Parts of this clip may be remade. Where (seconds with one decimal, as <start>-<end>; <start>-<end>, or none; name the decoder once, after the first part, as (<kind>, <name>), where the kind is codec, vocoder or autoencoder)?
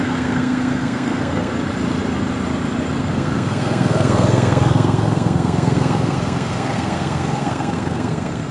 0.0-1.5 (codec, SNAC); 3.0-8.5